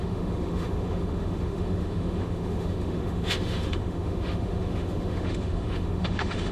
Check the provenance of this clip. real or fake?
fake